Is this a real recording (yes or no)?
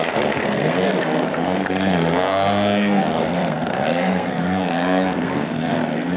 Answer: no